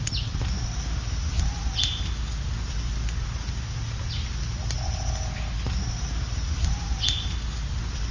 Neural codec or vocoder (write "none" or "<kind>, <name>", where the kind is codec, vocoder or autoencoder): none